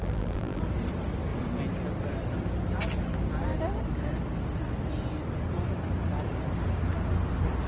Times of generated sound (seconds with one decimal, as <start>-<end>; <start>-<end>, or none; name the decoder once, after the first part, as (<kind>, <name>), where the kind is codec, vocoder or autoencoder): 0.0-0.6 (vocoder, BigVGAN v2)